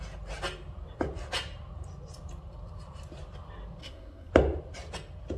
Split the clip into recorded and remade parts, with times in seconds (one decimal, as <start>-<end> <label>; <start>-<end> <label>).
0.0-3.8 recorded; 3.8-4.3 remade; 4.3-5.4 recorded